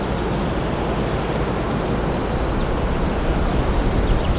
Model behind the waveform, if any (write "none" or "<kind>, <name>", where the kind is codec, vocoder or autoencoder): none